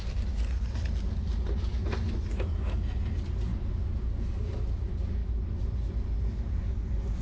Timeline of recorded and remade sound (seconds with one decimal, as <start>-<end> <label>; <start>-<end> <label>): 0.0-7.2 recorded